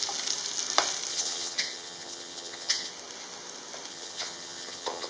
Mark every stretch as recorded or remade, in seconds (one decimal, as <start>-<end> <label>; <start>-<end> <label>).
0.0-1.1 recorded; 1.1-2.9 remade; 2.9-3.9 recorded; 3.9-5.1 remade